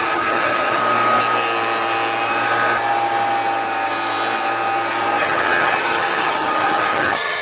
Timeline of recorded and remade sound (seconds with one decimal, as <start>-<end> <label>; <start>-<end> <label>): 0.0-0.8 remade; 0.8-5.2 recorded; 5.2-7.4 remade